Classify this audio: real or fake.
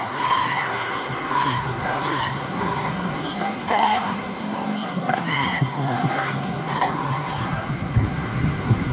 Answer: fake